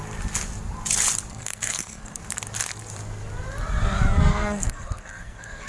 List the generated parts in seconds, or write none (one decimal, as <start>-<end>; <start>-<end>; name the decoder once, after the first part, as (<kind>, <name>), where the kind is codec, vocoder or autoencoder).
1.3-2.2 (codec, SNAC); 4.3-5.7